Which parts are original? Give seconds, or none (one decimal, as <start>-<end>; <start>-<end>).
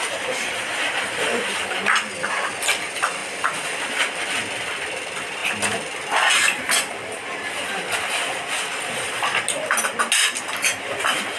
0.0-11.4